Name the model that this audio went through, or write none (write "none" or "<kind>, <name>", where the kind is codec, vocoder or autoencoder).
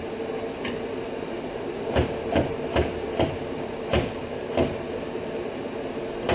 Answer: none